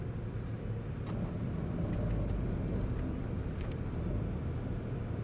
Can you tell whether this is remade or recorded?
recorded